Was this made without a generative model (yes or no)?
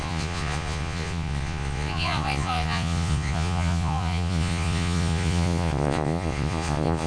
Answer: no